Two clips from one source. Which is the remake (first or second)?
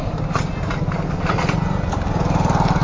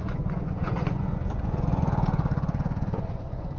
second